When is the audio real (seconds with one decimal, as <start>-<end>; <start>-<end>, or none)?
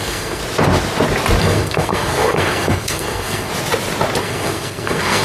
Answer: 0.4-1.4; 3.5-4.2